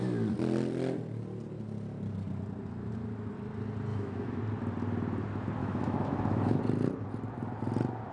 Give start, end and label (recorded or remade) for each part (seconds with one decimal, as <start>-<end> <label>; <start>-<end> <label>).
0.0-3.9 recorded; 3.9-4.4 remade; 4.4-5.6 recorded; 5.6-6.6 remade; 6.6-8.1 recorded

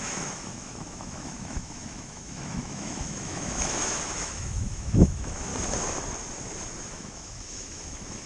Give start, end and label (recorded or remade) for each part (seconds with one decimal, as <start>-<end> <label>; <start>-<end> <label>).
0.0-5.5 remade; 5.5-6.9 recorded; 6.9-8.3 remade

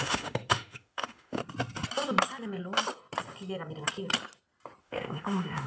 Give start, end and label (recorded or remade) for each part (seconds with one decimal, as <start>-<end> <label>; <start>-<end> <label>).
0.0-1.4 remade; 1.4-4.8 recorded; 4.8-5.7 remade

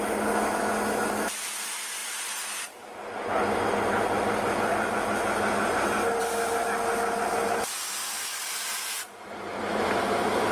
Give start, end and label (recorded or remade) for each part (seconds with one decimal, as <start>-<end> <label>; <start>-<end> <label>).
0.0-10.5 recorded

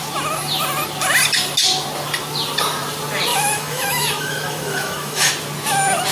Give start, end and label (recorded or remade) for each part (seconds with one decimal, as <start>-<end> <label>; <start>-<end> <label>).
0.0-3.3 recorded; 3.3-5.3 remade; 5.3-6.1 recorded

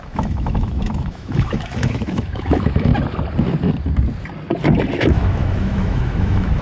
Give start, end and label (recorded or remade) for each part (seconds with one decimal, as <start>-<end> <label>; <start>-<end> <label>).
0.0-2.9 remade; 2.9-4.9 recorded; 4.9-6.6 remade

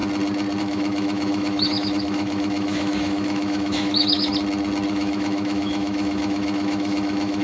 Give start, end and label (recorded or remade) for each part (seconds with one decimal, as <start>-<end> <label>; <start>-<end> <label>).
0.0-0.6 recorded; 0.6-4.3 remade; 4.3-4.9 recorded; 4.9-7.4 remade